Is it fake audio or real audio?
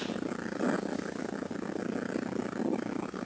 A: real